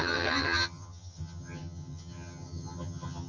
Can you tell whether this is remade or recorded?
remade